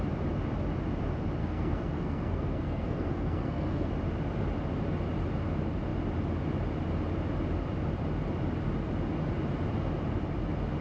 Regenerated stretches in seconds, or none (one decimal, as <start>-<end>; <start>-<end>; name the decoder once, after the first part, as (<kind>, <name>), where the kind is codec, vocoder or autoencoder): 1.4-3.9 (codec, SNAC)